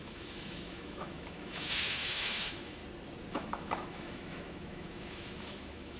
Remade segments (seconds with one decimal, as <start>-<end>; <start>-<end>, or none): 0.0-2.8; 3.3-6.0